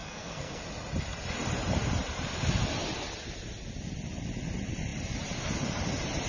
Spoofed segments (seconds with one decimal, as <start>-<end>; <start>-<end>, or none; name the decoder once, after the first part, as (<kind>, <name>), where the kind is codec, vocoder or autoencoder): 0.0-0.6 (codec, SNAC)